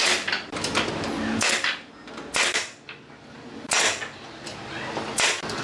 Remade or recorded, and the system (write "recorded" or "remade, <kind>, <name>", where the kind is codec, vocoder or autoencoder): recorded